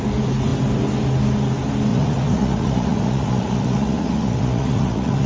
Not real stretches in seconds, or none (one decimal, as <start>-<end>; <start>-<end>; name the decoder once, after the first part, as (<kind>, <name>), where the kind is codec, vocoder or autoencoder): 1.9-5.3 (vocoder, Vocos)